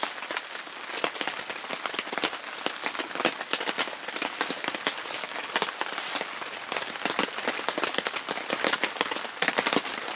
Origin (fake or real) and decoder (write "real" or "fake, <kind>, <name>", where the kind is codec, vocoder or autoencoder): real